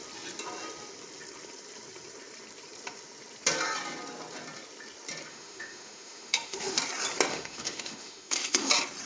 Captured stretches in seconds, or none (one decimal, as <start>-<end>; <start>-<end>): 0.0-5.3; 6.8-7.3; 8.7-9.1